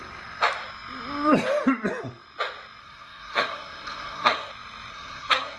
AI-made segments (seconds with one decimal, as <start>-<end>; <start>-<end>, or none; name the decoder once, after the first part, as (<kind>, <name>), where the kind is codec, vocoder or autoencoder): 2.8-4.5 (codec, SNAC); 4.9-5.6